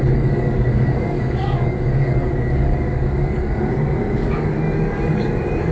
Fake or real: fake